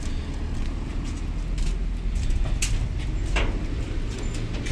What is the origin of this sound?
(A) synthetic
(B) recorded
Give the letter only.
B